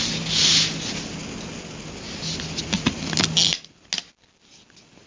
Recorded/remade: recorded